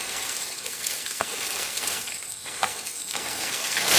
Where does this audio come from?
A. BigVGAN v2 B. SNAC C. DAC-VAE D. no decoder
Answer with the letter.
B